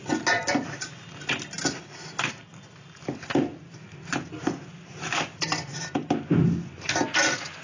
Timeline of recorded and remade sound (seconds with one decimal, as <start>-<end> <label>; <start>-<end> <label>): 0.0-7.6 recorded